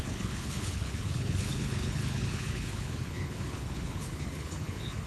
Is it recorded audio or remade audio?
remade